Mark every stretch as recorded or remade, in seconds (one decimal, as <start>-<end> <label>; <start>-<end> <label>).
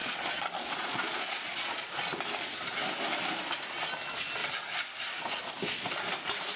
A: 0.0-1.9 remade; 1.9-6.6 recorded